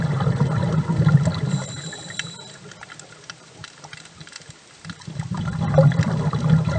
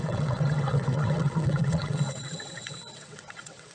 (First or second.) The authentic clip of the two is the first